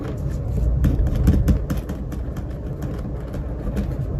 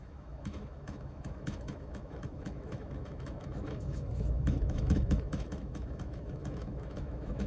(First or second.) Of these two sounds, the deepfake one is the second